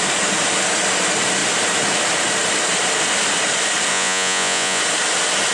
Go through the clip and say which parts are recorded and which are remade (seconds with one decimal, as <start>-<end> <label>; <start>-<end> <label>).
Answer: 0.0-3.9 recorded; 3.9-4.8 remade; 4.8-5.5 recorded